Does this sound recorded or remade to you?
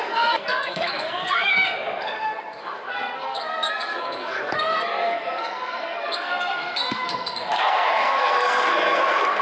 remade